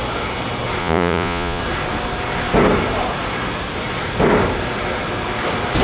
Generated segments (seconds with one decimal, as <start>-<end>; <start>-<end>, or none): 0.8-1.6